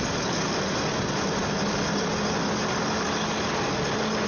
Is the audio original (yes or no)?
yes